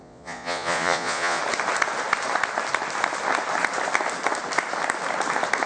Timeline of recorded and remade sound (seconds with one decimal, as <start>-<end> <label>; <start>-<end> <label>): 0.0-1.4 remade; 1.4-5.7 recorded